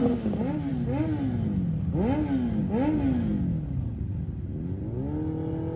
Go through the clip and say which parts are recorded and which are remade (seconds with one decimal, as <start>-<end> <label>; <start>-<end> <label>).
0.0-5.8 recorded